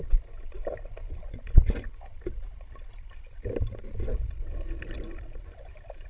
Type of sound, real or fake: real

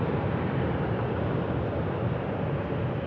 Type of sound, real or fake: real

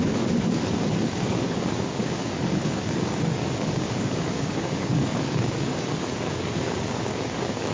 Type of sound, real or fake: fake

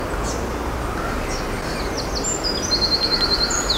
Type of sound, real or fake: real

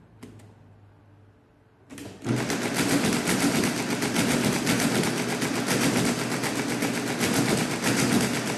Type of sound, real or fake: real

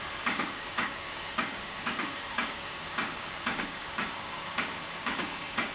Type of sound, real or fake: fake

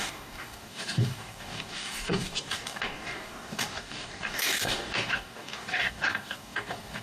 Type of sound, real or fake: fake